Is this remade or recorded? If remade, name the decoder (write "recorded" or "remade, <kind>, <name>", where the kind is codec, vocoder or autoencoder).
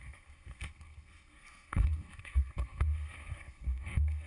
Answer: remade, codec, SNAC